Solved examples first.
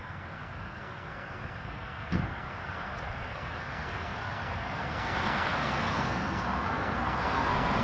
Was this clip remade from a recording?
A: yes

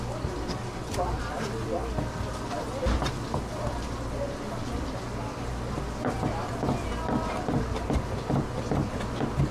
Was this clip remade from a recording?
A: no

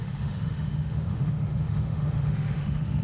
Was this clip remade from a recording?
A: yes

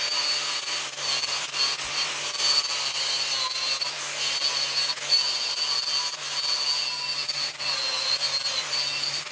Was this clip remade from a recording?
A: no